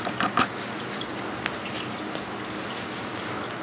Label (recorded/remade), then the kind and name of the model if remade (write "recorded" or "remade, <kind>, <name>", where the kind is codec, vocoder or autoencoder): recorded